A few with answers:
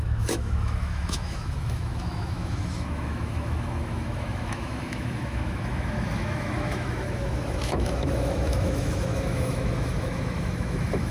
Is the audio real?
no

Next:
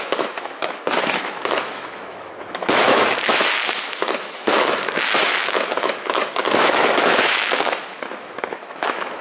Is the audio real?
no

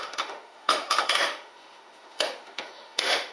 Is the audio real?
no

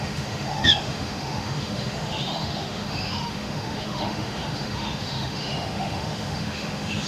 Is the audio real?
no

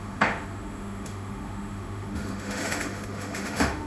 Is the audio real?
no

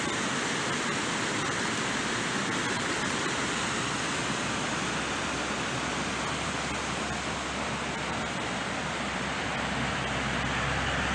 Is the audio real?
yes